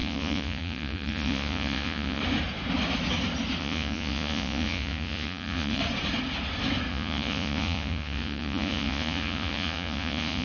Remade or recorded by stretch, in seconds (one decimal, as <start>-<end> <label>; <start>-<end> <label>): 0.0-2.2 remade; 2.2-3.6 recorded; 3.6-5.8 remade; 5.8-6.9 recorded; 6.9-10.4 remade